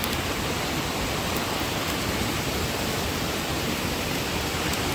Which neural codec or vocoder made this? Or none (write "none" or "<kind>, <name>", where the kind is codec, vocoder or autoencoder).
none